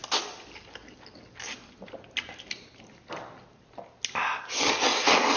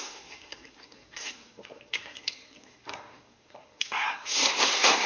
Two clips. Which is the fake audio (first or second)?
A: second